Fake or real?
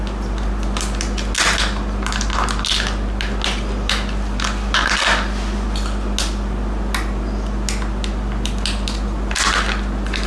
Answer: real